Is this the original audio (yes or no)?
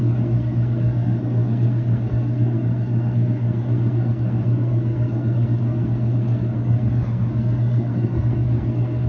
no